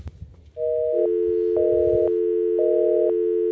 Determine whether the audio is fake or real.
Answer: real